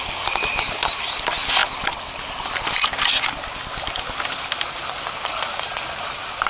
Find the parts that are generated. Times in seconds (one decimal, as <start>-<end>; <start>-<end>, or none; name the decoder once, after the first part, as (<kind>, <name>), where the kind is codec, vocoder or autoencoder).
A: none